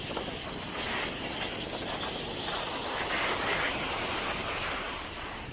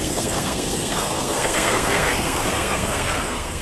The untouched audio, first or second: first